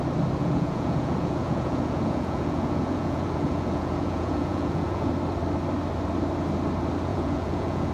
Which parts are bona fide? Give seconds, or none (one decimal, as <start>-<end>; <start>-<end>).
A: 0.0-0.4; 5.1-7.1